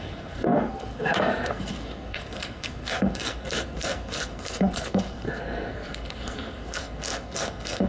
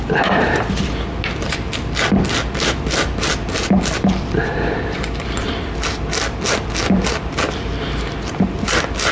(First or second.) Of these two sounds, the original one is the second